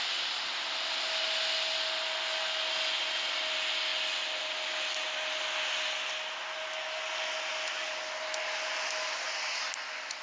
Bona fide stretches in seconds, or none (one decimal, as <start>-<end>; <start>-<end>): 0.0-10.2